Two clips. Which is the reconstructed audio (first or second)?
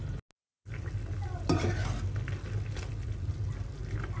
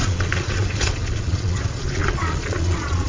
second